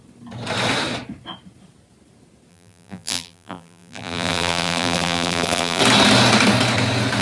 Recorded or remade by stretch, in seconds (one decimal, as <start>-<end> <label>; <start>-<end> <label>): 0.0-2.5 recorded; 2.5-5.8 remade; 5.8-7.2 recorded